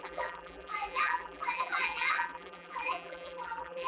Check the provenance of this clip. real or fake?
fake